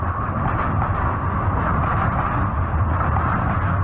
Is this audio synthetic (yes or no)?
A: no